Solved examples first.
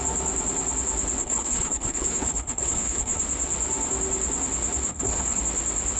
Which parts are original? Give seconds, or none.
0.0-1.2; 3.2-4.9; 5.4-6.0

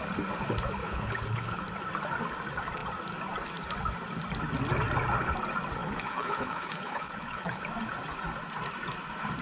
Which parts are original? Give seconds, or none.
0.0-0.8; 1.6-5.8; 7.6-9.4